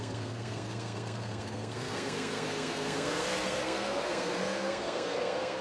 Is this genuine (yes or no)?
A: no